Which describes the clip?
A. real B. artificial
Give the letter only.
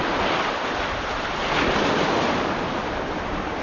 A